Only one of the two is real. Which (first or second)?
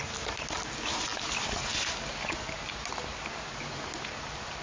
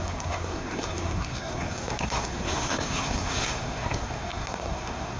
first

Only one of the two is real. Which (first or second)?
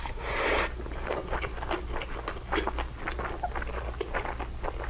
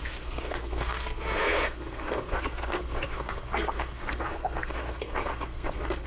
first